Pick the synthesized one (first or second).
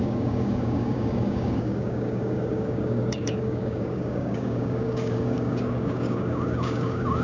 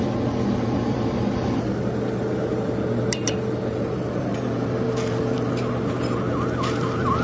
first